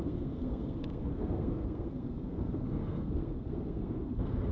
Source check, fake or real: fake